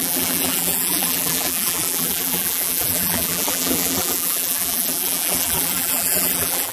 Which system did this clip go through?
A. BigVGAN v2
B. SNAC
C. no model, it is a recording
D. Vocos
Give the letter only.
A